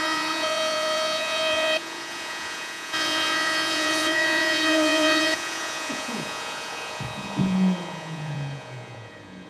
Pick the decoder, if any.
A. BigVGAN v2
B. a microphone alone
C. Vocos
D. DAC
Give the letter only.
C